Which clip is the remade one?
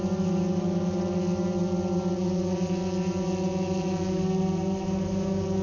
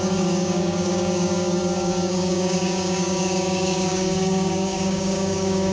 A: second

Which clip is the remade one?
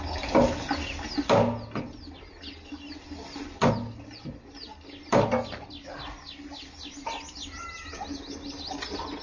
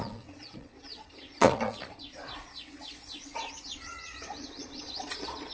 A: second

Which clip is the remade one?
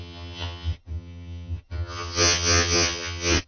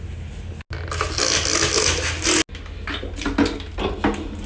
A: first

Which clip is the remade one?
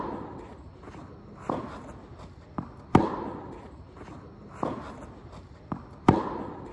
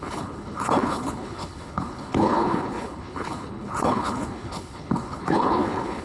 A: second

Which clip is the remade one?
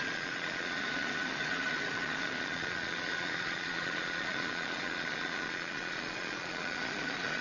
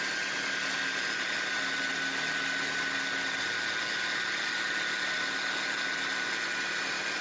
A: first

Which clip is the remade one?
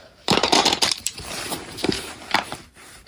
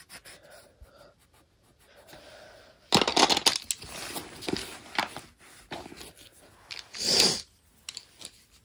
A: first